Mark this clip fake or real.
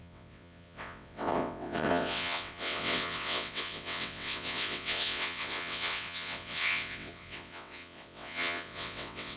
fake